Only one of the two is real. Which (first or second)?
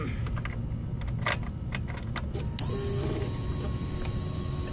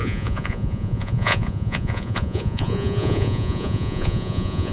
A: first